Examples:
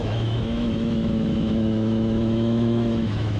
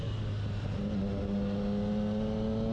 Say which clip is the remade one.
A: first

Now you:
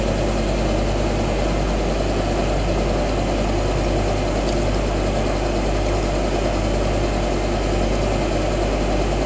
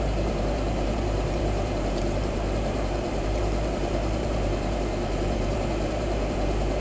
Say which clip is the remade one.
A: second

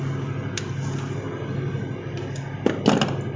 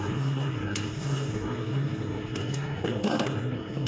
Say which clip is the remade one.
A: second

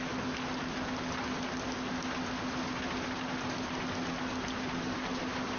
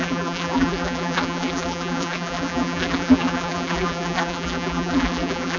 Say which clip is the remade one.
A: second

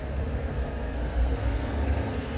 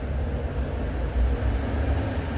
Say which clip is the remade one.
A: first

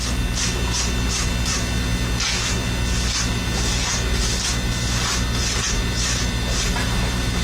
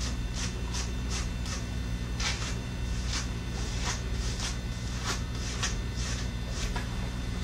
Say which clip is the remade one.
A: second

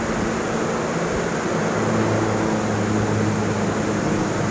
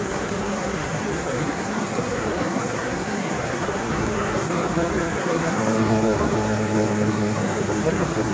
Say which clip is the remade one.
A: second